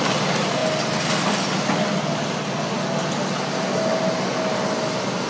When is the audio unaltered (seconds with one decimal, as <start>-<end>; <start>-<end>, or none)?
0.0-5.3